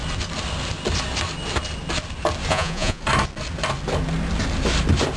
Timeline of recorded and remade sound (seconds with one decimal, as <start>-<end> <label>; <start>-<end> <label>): 0.0-2.5 recorded; 2.5-3.0 remade; 3.0-5.2 recorded

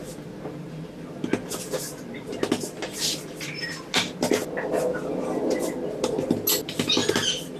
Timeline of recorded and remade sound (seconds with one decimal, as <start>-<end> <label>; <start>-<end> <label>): 0.0-7.6 recorded